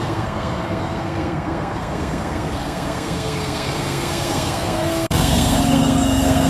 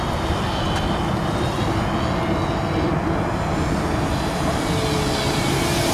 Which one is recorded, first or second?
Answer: second